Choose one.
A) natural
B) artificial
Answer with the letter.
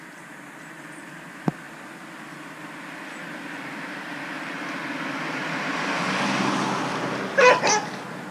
A